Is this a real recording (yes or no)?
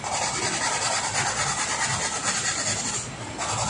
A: yes